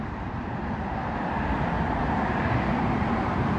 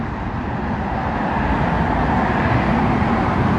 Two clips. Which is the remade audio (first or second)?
first